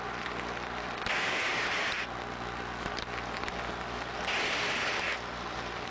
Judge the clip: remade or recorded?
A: recorded